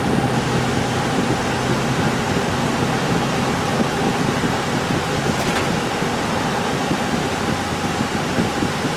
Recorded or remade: recorded